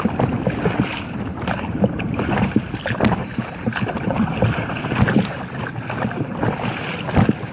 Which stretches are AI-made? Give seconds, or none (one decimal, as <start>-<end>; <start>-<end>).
1.3-2.6; 3.2-4.4